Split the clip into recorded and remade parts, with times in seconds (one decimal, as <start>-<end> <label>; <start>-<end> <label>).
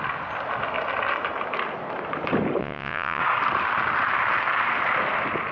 0.0-2.6 recorded; 2.6-3.2 remade; 3.2-5.5 recorded